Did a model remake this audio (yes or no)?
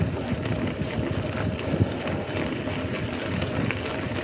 no